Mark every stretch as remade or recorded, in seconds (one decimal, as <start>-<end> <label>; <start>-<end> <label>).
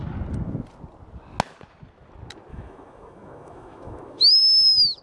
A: 0.0-2.5 recorded; 2.5-4.3 remade; 4.3-5.0 recorded